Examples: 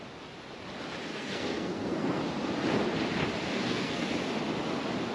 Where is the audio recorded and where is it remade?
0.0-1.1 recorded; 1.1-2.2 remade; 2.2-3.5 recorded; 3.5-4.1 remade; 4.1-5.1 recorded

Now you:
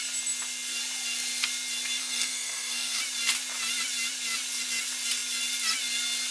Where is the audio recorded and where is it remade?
0.0-2.0 recorded; 2.0-3.0 remade; 3.0-6.3 recorded

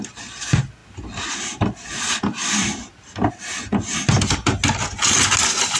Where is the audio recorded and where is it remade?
0.0-5.8 recorded